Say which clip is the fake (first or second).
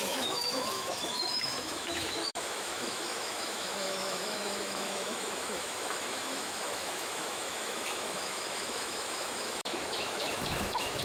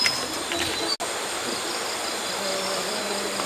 first